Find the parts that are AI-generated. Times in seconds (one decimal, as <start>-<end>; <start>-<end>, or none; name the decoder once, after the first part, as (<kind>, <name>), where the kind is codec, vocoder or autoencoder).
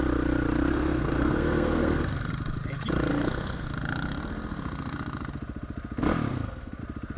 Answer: 0.7-2.3 (codec, SNAC); 3.1-3.7; 6.3-6.8